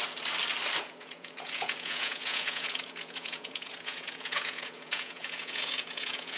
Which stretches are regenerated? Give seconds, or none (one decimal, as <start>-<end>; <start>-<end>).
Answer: 0.8-6.4